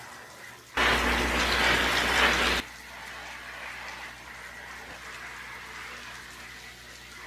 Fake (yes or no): no